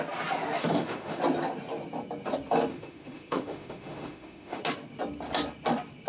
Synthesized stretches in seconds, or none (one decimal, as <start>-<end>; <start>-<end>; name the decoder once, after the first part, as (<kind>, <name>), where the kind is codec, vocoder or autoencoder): 0.6-1.2 (autoencoder, DAC-VAE); 2.7-4.6